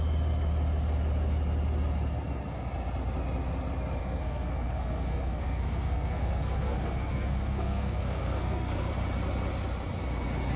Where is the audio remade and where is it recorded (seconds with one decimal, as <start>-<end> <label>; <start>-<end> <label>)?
0.0-4.0 recorded; 4.0-8.9 remade; 8.9-10.6 recorded